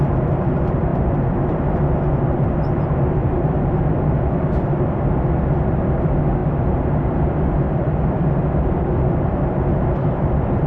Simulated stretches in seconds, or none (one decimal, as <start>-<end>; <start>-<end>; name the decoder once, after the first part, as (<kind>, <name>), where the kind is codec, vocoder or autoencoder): 0.0-0.9 (vocoder, BigVGAN v2); 1.7-10.7